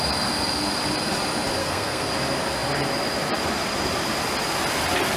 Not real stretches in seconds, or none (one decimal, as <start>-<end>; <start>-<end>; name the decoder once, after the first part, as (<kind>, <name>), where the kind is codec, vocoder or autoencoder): 1.6-2.1 (codec, SNAC)